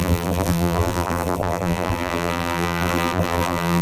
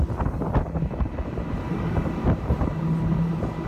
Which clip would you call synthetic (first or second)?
first